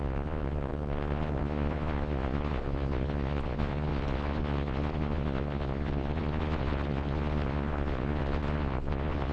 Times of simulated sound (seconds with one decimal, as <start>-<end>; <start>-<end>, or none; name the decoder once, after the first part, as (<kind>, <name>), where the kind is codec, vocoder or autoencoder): 0.0-9.3 (vocoder, Vocos)